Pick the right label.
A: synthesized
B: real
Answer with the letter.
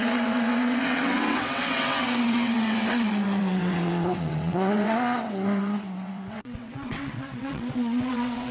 A